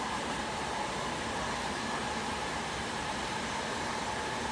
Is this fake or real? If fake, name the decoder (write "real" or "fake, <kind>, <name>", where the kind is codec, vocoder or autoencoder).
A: fake, vocoder, BigVGAN v2